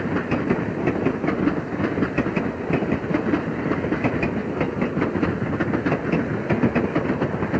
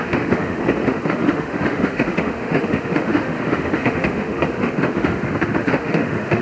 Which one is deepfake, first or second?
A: second